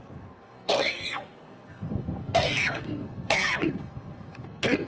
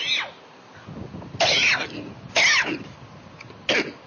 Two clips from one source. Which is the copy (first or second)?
first